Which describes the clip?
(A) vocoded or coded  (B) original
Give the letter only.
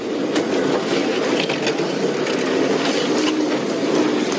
B